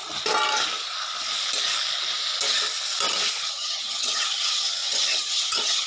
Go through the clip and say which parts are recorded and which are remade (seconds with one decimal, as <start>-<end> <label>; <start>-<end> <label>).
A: 0.0-3.5 recorded; 3.5-5.9 remade